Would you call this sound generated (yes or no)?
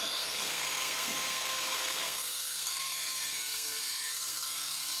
yes